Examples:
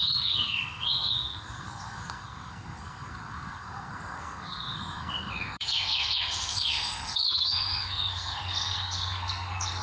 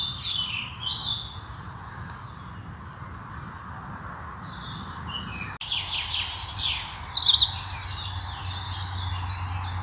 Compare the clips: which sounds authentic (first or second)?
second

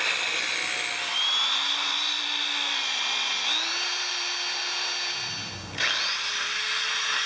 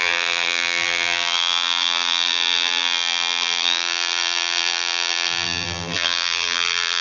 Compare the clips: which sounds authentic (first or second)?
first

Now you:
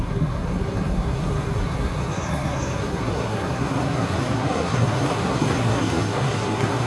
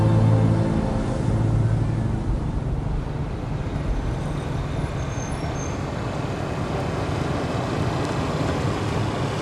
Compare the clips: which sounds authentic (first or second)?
second